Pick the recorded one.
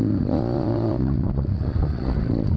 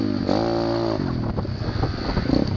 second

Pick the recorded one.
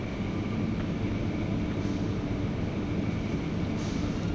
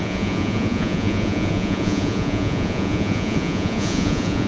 first